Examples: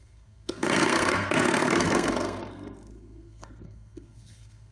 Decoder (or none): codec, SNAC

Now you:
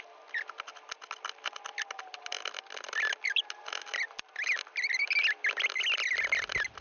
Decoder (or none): none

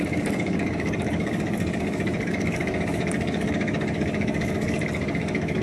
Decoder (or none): codec, DAC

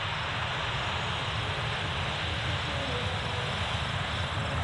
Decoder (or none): none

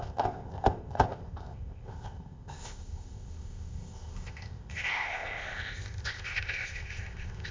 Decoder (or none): codec, ZipCodec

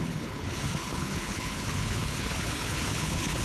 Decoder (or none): codec, HILCodec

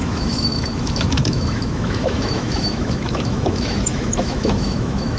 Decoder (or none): autoencoder, DAC-VAE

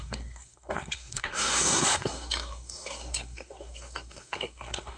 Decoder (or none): codec, SNAC